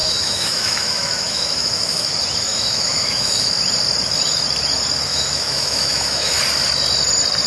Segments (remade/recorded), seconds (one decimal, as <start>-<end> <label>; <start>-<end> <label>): 0.0-2.1 remade; 2.1-2.5 recorded; 2.5-3.5 remade; 3.5-5.1 recorded; 5.1-6.4 remade; 6.4-7.5 recorded